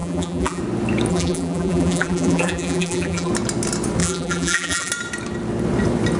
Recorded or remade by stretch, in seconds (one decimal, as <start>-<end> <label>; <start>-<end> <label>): 0.0-0.6 remade; 0.6-1.1 recorded; 1.1-3.3 remade; 3.3-4.0 recorded; 4.0-4.9 remade; 4.9-6.2 recorded